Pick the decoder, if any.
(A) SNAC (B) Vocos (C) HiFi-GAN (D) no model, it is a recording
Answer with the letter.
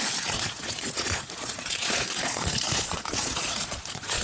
B